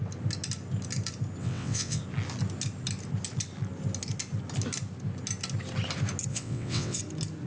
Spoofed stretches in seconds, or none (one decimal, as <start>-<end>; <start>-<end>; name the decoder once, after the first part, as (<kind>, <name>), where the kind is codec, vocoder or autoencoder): 1.4-2.0 (vocoder, WaveNeXt); 6.3-7.0